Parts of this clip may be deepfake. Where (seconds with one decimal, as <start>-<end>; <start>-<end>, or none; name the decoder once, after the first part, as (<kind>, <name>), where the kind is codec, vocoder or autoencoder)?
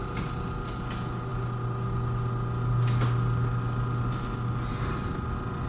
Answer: none